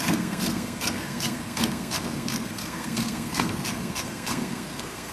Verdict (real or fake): fake